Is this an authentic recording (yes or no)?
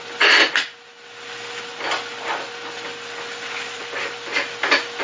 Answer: yes